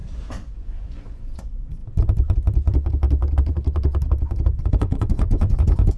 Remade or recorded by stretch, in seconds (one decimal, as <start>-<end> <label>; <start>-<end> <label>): 0.0-0.5 recorded; 0.5-1.8 remade; 1.8-4.7 recorded; 4.7-6.0 remade